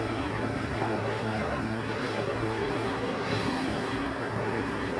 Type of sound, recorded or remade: remade